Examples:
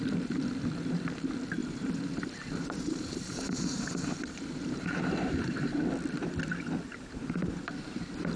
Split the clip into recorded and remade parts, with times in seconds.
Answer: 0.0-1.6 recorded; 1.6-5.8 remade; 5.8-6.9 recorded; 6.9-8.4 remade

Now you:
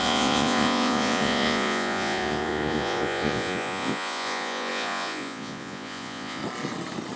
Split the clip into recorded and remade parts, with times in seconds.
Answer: 0.0-6.4 remade; 6.4-7.2 recorded

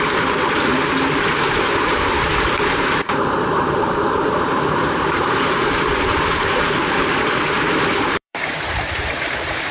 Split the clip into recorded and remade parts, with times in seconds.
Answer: 0.0-2.3 remade; 2.3-3.5 recorded; 3.5-9.7 remade

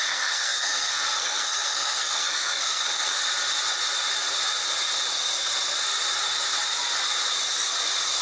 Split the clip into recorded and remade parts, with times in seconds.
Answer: 0.0-3.2 remade; 3.2-8.2 recorded

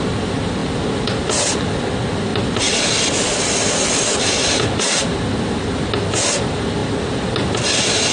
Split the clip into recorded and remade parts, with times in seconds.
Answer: 0.0-8.1 recorded